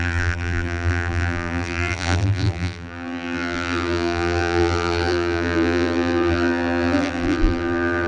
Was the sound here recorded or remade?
remade